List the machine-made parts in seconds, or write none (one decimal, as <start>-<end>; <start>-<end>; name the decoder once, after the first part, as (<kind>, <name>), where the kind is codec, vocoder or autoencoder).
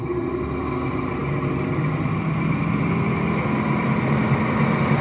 none